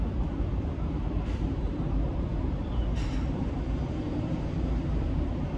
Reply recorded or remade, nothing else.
remade